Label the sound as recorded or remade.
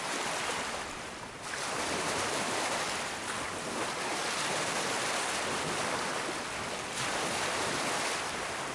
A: recorded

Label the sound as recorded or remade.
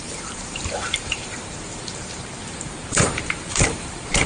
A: remade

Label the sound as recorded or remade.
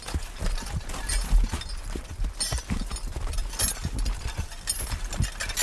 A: recorded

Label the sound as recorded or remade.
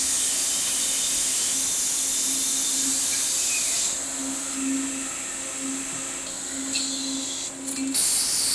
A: recorded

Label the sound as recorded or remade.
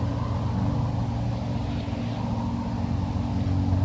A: recorded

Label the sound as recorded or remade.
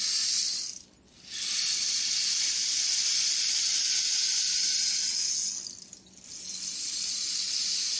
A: recorded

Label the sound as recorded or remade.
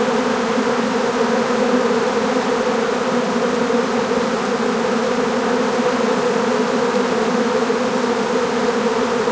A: recorded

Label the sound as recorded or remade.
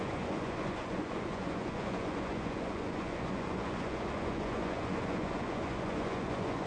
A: remade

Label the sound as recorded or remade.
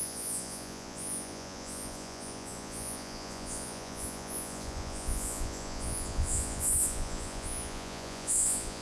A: remade